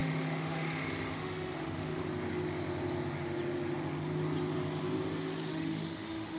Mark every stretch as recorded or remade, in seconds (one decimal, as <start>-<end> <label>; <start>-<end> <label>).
0.0-2.0 remade; 2.0-5.5 recorded; 5.5-6.4 remade